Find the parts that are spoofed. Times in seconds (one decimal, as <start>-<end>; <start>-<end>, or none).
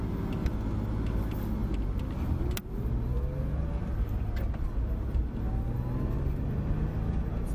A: none